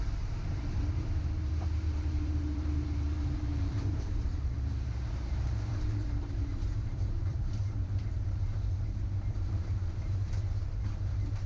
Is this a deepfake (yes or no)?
yes